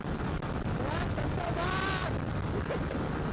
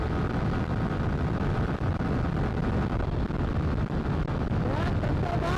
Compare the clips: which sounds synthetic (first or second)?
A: first